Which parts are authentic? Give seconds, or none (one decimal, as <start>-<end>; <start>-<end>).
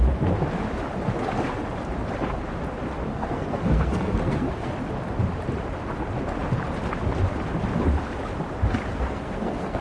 0.0-3.1; 4.7-8.9